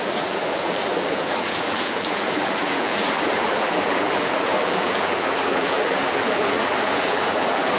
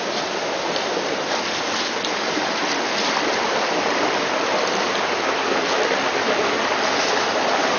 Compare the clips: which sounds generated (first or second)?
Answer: first